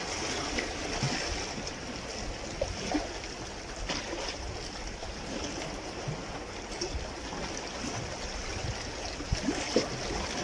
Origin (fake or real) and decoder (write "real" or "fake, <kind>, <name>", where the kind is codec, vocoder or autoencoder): real